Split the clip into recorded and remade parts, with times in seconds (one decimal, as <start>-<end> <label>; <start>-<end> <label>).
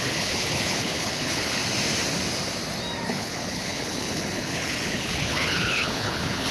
0.0-1.6 remade; 1.6-3.1 recorded; 3.1-6.5 remade